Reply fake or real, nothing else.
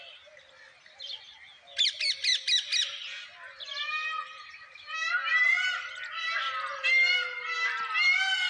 real